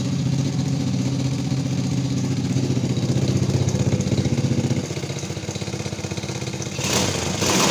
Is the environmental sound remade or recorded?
recorded